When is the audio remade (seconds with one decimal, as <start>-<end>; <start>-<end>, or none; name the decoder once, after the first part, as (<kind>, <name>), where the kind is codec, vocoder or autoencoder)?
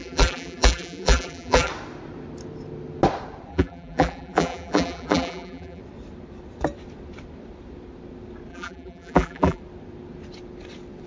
0.0-1.7 (vocoder, BigVGAN v2); 3.5-5.8; 8.5-9.6